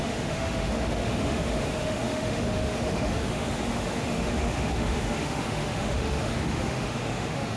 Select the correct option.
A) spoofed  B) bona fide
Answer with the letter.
A